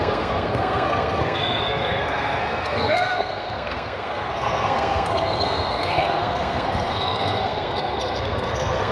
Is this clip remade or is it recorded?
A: remade